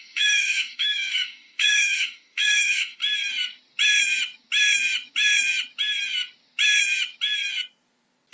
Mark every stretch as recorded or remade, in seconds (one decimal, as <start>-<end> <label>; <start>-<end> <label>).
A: 0.0-3.0 remade; 3.0-8.3 recorded

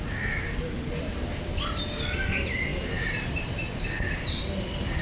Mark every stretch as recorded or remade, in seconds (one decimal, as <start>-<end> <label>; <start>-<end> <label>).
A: 0.0-5.0 recorded

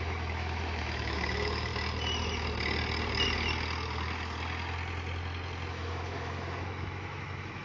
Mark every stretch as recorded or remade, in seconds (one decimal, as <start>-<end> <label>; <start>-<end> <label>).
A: 0.0-1.7 remade; 1.7-5.7 recorded; 5.7-7.6 remade

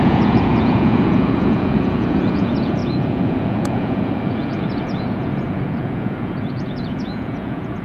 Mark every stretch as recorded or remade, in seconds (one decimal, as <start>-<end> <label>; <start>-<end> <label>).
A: 0.0-7.8 remade

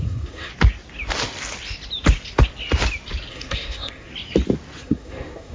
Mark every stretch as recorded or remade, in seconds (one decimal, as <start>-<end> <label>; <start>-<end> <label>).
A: 0.0-0.5 remade; 0.5-3.3 recorded; 3.3-4.1 remade; 4.1-4.8 recorded; 4.8-5.5 remade